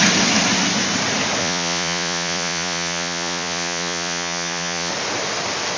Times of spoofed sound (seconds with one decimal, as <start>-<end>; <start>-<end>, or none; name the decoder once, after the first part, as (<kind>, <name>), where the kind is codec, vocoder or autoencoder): 1.4-4.9 (vocoder, Vocos)

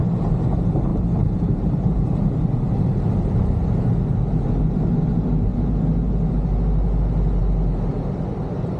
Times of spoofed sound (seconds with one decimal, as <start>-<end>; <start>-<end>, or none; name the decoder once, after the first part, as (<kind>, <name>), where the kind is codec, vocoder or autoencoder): 0.9-3.5 (vocoder, BigVGAN v2)

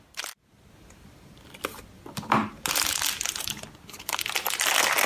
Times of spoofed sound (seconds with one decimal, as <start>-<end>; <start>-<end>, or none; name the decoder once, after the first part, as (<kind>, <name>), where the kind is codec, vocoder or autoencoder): none

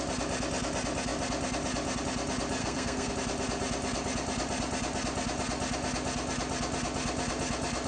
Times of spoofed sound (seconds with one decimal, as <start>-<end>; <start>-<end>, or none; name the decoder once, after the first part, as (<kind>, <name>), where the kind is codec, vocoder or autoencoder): 2.6-3.1 (codec, SNAC)

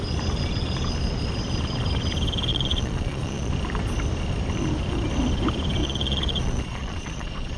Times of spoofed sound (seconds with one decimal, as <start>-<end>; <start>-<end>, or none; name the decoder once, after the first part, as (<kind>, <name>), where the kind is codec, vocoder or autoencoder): 2.5-3.5 (vocoder, Vocos); 5.8-7.6